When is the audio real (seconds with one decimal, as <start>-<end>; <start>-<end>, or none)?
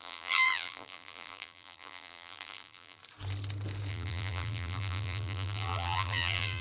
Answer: 3.0-3.9